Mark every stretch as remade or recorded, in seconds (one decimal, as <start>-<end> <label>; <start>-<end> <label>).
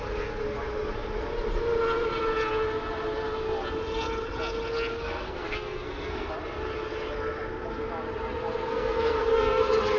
0.0-4.9 recorded; 4.9-6.3 remade; 6.3-8.7 recorded; 8.7-9.6 remade; 9.6-10.0 recorded